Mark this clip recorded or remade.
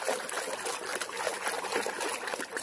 recorded